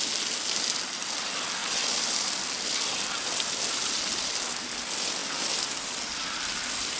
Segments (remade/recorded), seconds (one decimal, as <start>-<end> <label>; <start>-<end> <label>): 0.0-7.0 recorded